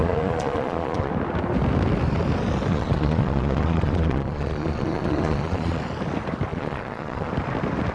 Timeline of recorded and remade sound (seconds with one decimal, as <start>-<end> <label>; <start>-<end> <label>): 0.0-1.1 remade; 1.1-2.7 recorded; 2.7-5.8 remade; 5.8-6.5 recorded; 6.5-7.3 remade; 7.3-7.9 recorded